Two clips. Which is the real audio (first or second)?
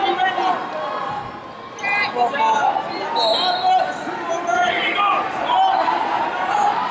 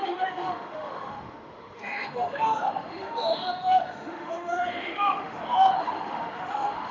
first